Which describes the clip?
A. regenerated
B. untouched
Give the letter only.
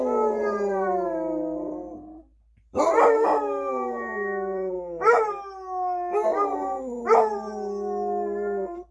B